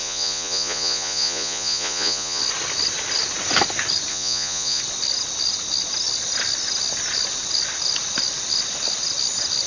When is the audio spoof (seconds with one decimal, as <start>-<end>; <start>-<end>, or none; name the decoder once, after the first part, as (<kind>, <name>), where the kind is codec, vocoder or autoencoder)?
0.0-2.4 (vocoder, Vocos); 4.1-4.8